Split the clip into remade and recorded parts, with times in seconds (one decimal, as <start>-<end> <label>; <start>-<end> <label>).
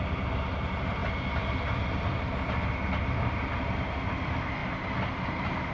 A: 0.0-5.7 recorded